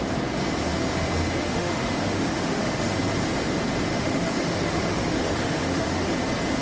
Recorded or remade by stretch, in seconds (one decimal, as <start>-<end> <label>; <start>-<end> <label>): 0.0-1.4 recorded; 1.4-2.9 remade; 2.9-3.9 recorded; 3.9-6.1 remade; 6.1-6.6 recorded